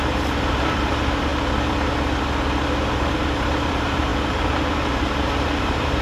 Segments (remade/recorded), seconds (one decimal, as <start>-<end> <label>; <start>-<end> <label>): 0.0-1.3 remade; 1.3-2.9 recorded; 2.9-6.0 remade